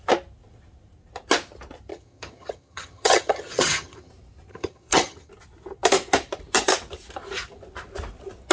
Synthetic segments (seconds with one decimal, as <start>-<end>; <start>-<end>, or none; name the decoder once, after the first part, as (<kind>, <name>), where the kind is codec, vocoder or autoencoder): 1.9-4.1 (vocoder, HiFi-GAN); 4.5-5.3